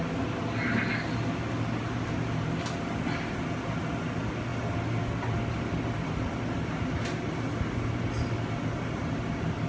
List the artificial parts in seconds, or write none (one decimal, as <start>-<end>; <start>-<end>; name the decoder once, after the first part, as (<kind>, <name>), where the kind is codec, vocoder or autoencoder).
none